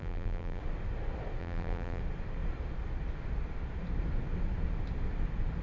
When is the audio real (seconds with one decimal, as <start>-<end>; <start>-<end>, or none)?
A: 0.6-1.4; 2.0-5.6